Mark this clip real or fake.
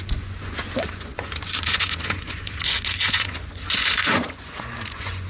fake